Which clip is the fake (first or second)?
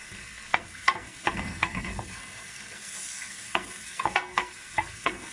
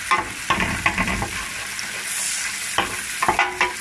first